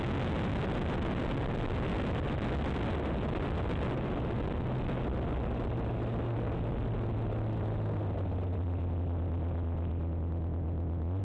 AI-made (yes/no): no